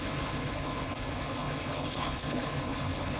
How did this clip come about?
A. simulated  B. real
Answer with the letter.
A